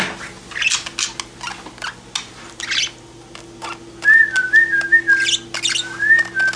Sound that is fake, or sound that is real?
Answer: real